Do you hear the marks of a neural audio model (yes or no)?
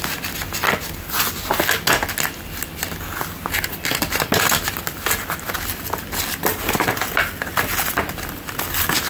no